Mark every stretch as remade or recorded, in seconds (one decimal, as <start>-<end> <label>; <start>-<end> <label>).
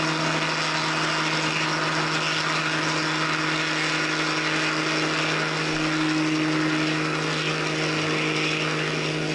0.0-9.3 recorded